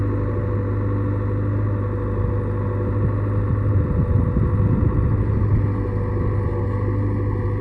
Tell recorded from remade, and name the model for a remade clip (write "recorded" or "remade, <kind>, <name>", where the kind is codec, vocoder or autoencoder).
recorded